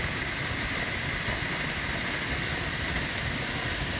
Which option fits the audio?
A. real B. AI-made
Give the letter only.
A